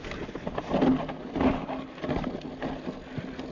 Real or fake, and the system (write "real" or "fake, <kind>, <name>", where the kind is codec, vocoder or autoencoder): real